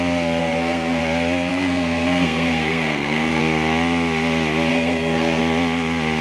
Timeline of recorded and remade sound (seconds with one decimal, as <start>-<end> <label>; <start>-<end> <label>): 0.0-0.4 recorded; 0.4-1.0 remade; 1.0-1.5 recorded; 1.5-3.4 remade; 3.4-4.7 recorded; 4.7-5.4 remade; 5.4-6.2 recorded